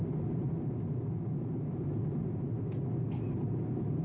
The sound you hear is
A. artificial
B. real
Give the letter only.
B